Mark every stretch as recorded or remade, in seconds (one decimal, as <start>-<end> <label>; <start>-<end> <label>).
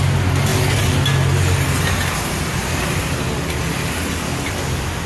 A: 0.0-5.1 recorded